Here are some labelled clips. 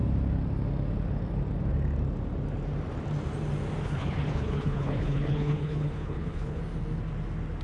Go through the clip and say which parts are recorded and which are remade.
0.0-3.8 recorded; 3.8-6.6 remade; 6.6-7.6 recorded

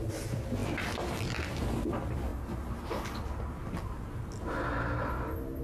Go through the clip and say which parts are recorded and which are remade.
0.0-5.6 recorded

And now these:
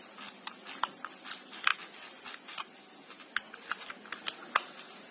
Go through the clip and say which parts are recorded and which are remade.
0.0-5.1 recorded

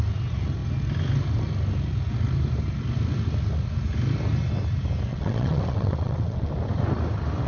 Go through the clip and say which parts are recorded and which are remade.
0.0-5.1 recorded; 5.1-6.5 remade; 6.5-7.5 recorded

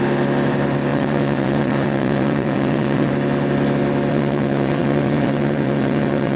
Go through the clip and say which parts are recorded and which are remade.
0.0-0.9 recorded; 0.9-3.1 remade; 3.1-4.1 recorded; 4.1-6.4 remade

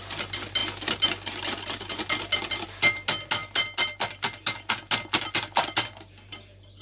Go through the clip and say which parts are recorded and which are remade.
0.0-6.8 recorded

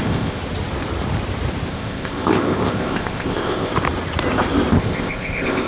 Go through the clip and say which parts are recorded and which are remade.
0.0-0.4 remade; 0.4-1.7 recorded; 1.7-3.7 remade; 3.7-4.7 recorded; 4.7-5.7 remade

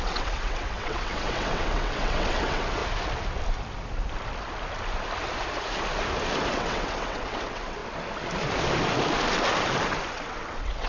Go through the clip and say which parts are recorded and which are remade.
0.0-2.8 remade; 2.8-6.5 recorded; 6.5-7.8 remade; 7.8-10.1 recorded; 10.1-10.9 remade